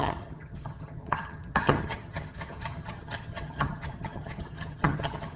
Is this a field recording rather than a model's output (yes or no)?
no